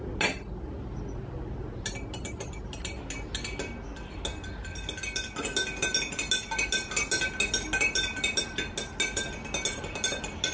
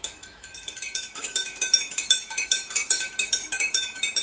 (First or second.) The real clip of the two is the first